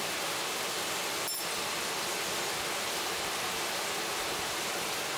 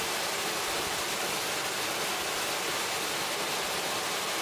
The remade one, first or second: second